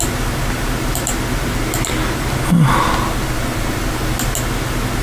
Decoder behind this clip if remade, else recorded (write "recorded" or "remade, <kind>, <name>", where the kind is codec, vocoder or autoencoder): recorded